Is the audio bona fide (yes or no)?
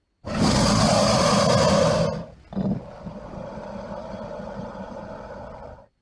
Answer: yes